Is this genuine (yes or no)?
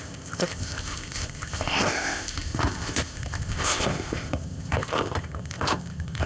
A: no